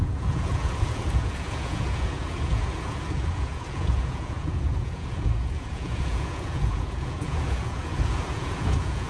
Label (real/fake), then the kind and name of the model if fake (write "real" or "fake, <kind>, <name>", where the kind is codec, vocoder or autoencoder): fake, vocoder, Vocos